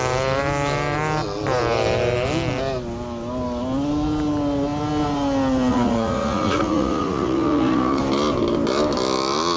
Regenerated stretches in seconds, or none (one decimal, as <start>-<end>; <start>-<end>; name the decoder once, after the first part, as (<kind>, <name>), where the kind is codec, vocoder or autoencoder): 5.7-8.0 (vocoder, Vocos)